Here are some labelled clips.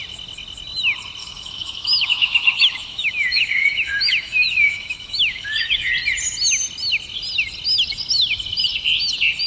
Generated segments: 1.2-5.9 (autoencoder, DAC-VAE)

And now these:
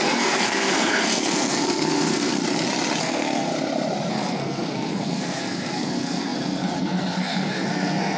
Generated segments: 0.0-2.4 (codec, SNAC); 3.0-3.5; 4.1-8.2

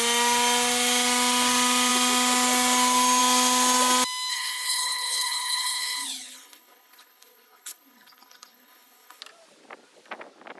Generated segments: 4.3-9.2 (codec, HILCodec)

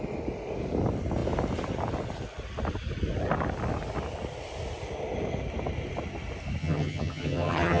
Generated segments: 6.6-7.8 (vocoder, HiFi-GAN)

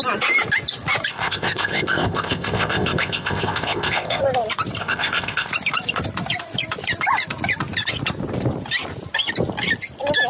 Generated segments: 1.1-4.2 (codec, ZipCodec); 4.8-5.5

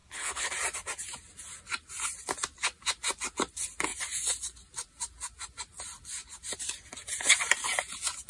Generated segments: 0.0-0.5 (codec, HILCodec)

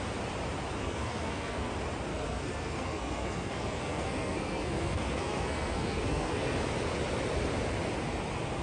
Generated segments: 0.8-1.7 (codec, SNAC); 2.1-6.6

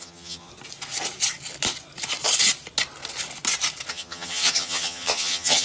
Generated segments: 0.0-0.5 (vocoder, HiFi-GAN); 3.9-5.6